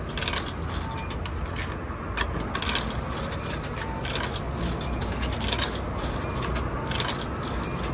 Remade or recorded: recorded